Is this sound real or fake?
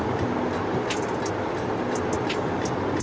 real